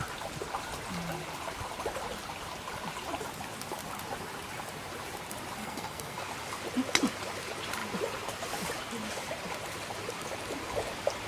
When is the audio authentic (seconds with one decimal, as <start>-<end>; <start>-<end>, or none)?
0.0-5.6; 6.3-11.3